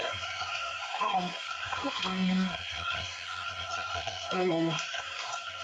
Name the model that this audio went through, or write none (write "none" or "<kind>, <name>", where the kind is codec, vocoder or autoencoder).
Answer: codec, SNAC